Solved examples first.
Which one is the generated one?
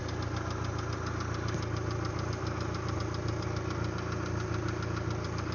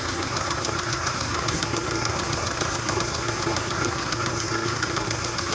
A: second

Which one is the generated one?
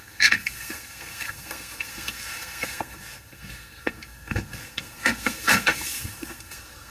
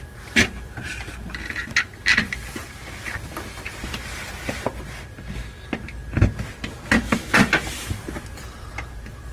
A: first